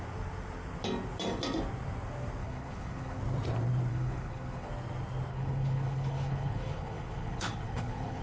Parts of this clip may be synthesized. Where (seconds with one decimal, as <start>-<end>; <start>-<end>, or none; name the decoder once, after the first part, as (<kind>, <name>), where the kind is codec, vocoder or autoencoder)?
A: 2.4-3.2 (codec, HILCodec); 3.9-4.7; 5.3-8.2